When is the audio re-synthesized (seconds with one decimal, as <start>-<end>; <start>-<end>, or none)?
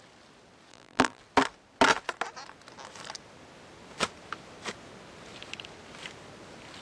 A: 0.7-1.2